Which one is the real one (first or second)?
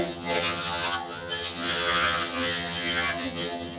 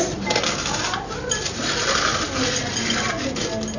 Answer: second